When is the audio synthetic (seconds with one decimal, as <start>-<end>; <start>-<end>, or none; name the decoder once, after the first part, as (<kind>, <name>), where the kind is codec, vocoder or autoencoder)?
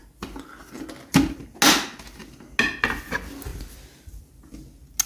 3.5-4.2 (vocoder, BigVGAN v2)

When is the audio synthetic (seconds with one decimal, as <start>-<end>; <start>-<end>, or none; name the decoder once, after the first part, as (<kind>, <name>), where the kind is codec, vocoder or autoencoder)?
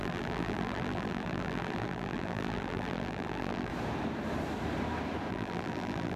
0.0-3.7 (vocoder, BigVGAN v2); 5.3-6.2